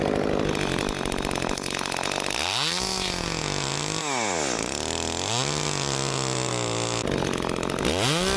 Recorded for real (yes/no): yes